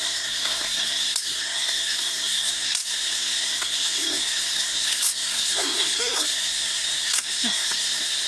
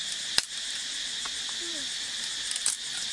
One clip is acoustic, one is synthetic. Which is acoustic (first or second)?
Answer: second